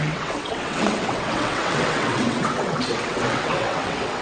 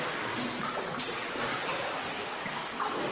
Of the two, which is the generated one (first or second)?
first